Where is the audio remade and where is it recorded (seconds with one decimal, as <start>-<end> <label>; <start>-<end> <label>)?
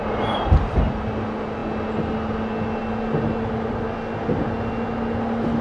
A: 0.0-5.6 recorded